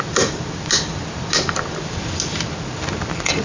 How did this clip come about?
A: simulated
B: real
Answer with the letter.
B